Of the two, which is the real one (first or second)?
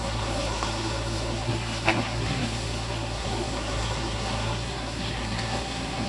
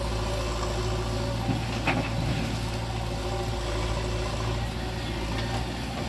second